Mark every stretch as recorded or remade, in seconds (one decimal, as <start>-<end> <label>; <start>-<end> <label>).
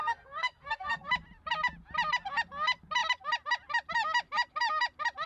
0.0-1.1 remade; 1.1-5.3 recorded